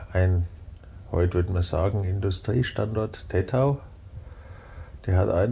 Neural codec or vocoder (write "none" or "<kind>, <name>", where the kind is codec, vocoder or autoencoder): none